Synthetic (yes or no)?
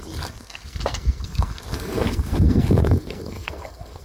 yes